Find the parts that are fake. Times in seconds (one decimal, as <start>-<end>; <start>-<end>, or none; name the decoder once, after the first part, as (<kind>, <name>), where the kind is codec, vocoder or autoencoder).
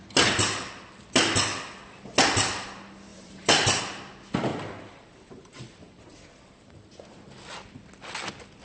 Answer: 3.1-3.8 (vocoder, BigVGAN v2); 4.5-7.0